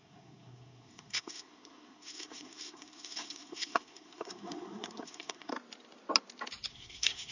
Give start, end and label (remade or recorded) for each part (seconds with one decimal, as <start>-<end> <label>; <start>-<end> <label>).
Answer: 0.0-5.5 remade; 5.5-6.7 recorded; 6.7-7.3 remade